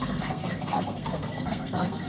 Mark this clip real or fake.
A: fake